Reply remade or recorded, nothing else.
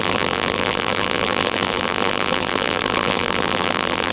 remade